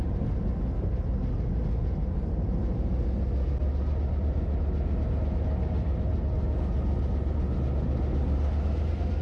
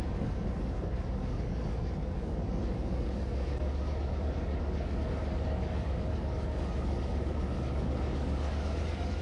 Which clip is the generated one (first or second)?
second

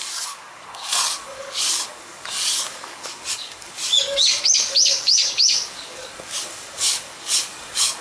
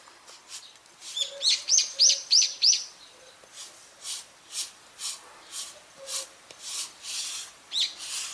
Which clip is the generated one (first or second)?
first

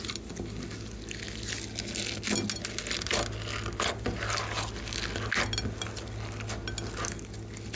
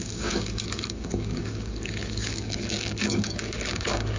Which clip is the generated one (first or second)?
second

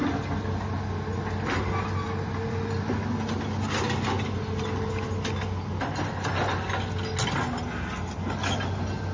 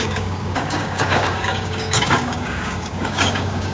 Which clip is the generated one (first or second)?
second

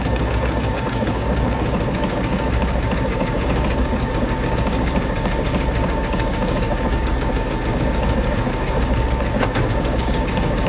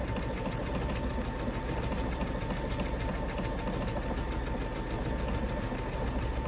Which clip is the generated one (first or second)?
first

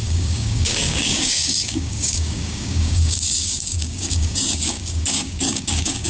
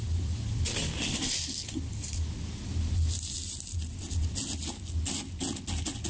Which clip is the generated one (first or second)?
first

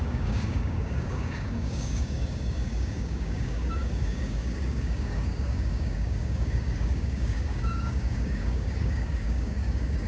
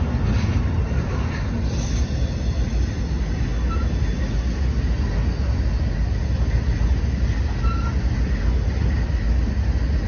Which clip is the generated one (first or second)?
first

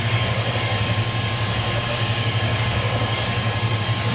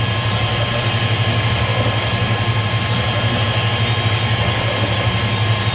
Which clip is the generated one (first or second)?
first